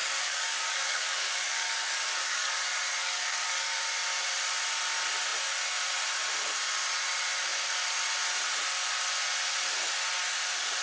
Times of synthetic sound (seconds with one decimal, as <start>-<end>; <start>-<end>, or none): 0.0-2.5; 3.0-3.8